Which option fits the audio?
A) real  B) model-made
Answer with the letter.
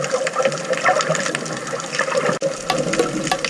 A